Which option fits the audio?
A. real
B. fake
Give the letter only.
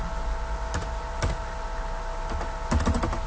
A